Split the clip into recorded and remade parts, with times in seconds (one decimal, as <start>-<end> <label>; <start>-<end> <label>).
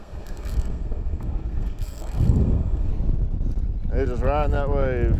0.0-2.9 remade; 2.9-5.2 recorded